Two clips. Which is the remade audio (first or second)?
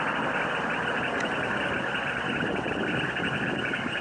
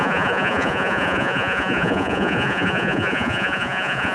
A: second